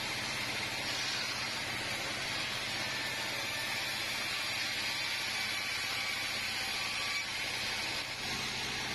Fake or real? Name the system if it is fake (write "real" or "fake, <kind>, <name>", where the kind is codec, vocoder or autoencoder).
real